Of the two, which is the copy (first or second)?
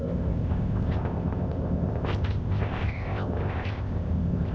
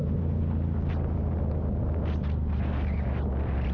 first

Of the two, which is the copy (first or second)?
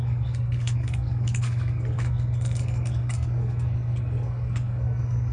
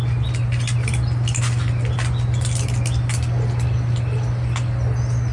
first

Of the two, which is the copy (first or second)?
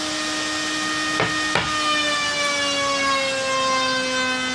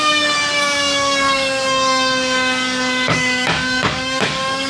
second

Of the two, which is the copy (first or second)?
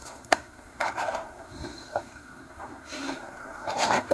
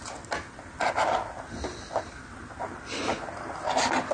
first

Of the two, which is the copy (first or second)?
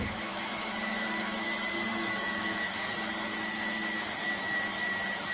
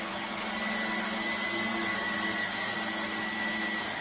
first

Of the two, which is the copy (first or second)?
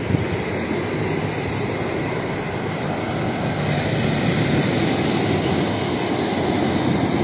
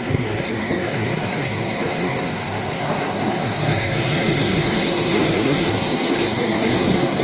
second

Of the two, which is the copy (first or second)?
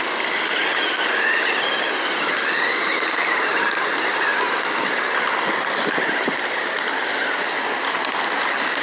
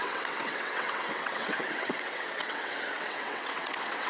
second